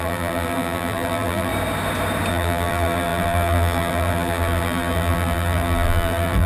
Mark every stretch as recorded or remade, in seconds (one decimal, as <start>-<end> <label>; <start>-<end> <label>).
0.0-1.5 remade; 1.5-2.3 recorded; 2.3-6.5 remade

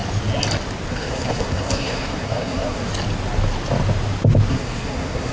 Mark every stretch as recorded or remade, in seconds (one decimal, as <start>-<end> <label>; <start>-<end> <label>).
0.0-0.9 recorded; 0.9-2.9 remade; 2.9-4.5 recorded; 4.5-5.3 remade